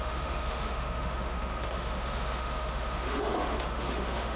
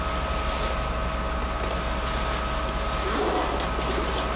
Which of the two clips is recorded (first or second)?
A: second